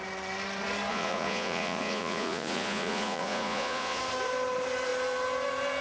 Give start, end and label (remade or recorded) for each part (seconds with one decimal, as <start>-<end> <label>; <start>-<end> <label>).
0.0-0.9 recorded; 0.9-4.0 remade; 4.0-5.8 recorded